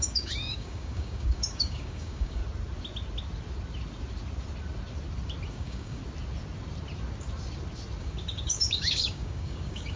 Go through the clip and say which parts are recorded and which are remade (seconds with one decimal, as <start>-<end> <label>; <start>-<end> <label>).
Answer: 0.0-2.4 remade; 2.4-5.5 recorded; 5.5-6.0 remade; 6.0-8.0 recorded; 8.0-10.0 remade